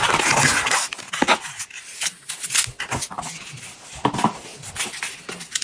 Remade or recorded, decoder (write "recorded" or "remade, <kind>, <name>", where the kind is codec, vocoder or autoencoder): recorded